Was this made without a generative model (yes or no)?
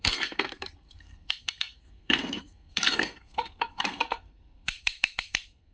no